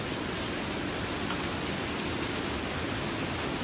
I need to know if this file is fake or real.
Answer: real